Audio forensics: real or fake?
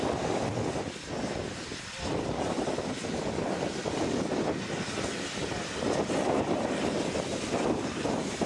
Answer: real